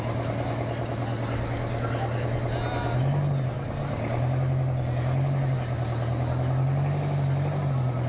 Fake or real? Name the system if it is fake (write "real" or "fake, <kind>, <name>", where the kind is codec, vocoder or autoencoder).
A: real